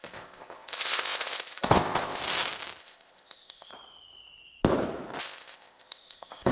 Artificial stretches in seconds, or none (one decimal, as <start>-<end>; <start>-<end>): 0.0-2.2; 2.8-3.7; 5.2-6.5